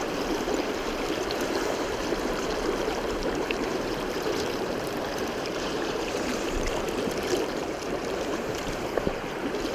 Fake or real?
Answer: fake